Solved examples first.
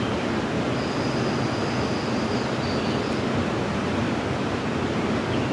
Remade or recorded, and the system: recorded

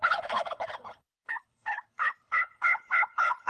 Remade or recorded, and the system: remade, codec, HILCodec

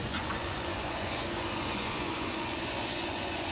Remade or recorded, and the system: remade, vocoder, Vocos